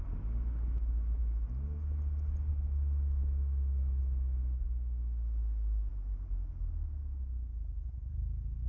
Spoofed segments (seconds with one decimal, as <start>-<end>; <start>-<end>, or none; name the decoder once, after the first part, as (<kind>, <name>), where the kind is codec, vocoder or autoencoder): 3.2-4.0 (codec, DAC)

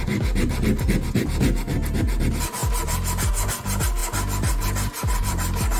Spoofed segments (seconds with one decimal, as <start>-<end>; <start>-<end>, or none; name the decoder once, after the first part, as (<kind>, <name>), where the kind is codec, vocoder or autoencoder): none

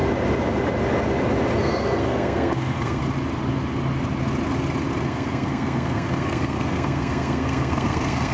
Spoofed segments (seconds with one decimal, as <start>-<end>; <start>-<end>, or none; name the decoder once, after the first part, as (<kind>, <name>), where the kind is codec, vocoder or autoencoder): 1.6-3.0 (codec, SNAC); 5.1-8.3

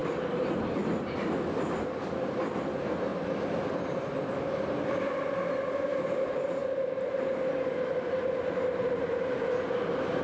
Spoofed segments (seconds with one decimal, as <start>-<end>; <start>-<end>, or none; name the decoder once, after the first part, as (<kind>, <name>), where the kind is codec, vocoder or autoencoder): none

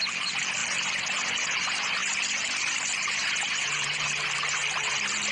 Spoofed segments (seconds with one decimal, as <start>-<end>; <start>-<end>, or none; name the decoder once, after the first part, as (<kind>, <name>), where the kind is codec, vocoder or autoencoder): 3.2-4.1 (vocoder, Vocos)

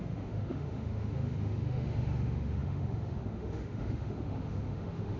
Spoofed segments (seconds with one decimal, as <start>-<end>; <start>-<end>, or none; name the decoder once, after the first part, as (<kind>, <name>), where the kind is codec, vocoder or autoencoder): 0.0-5.2 (autoencoder, DAC-VAE)

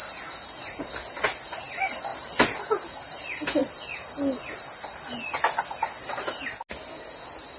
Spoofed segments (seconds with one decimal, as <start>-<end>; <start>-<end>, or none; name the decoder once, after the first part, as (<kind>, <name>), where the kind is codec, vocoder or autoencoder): 2.1-2.6 (vocoder, BigVGAN v2)